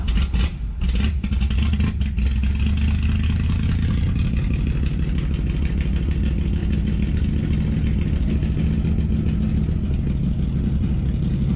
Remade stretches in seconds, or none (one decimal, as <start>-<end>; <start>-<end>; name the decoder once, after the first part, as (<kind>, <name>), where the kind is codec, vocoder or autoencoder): none

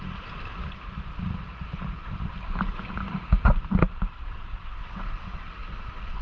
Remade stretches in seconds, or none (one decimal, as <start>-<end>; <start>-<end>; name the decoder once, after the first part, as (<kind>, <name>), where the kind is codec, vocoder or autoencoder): 4.5-5.5 (vocoder, WaveNeXt)

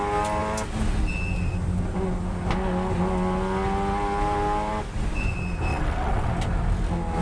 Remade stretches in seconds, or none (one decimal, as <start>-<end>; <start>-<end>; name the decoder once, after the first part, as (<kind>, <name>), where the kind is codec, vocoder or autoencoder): 5.7-6.3 (vocoder, WaveNeXt)

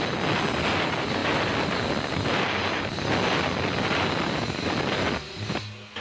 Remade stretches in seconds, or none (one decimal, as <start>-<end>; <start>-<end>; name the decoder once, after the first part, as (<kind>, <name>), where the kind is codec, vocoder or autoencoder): none

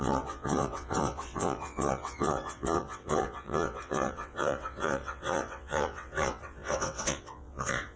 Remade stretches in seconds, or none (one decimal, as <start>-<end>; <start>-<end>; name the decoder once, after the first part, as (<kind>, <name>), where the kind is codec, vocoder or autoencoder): 0.0-8.0 (vocoder, WaveNeXt)

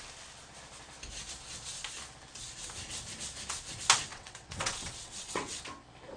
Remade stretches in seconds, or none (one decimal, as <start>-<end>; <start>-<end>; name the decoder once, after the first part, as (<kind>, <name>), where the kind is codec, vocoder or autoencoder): 4.1-5.6 (vocoder, WaveNeXt)

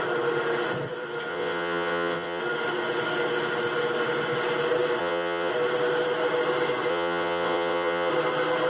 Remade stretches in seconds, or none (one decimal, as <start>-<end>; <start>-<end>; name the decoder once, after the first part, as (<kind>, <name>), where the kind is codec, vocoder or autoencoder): 1.3-2.4 (vocoder, WaveNeXt); 5.0-5.5; 6.9-8.1